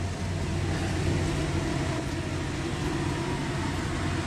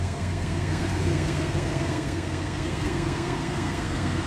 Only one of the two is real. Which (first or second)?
first